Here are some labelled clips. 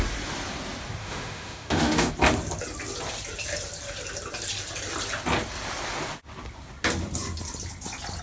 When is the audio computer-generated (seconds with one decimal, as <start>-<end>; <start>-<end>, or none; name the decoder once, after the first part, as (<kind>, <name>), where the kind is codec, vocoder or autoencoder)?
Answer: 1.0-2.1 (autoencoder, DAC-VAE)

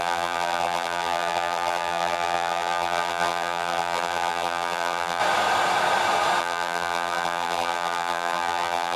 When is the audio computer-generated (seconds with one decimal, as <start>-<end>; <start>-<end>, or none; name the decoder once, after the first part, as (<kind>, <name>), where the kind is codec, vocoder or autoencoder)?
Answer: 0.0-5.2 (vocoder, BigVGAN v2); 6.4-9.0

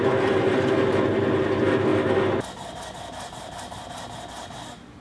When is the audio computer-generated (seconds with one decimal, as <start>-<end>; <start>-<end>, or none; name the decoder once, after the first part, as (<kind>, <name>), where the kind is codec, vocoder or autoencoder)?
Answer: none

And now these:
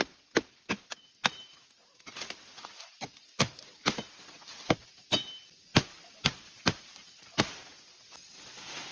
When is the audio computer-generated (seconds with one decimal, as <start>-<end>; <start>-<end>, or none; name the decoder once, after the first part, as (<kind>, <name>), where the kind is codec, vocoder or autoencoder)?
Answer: none

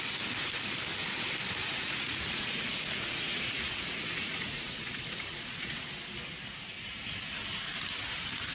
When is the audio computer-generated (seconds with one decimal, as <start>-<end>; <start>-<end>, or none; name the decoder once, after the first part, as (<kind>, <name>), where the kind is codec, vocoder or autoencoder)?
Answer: 1.6-5.9 (vocoder, Vocos)

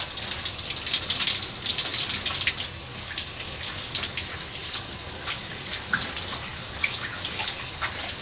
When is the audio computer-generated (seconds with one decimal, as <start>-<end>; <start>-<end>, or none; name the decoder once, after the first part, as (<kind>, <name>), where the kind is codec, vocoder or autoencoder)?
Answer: 2.9-3.9 (codec, DAC); 4.6-5.7; 6.5-8.2

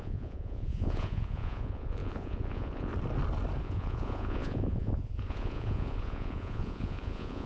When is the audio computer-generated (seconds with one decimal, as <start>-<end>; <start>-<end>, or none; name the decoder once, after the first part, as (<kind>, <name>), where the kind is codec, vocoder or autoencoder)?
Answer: 0.0-2.9 (vocoder, Vocos); 3.6-7.5